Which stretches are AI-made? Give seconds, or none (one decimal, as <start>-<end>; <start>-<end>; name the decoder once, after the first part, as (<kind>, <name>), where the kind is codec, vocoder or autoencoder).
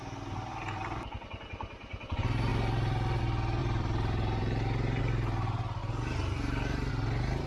2.5-3.2 (vocoder, BigVGAN v2); 3.6-5.0; 5.8-6.9